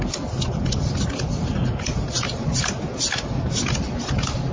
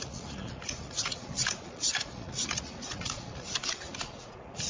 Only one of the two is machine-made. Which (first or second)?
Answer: second